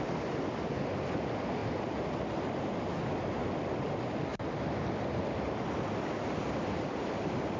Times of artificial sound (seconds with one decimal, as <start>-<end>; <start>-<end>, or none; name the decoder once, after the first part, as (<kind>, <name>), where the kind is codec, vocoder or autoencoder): none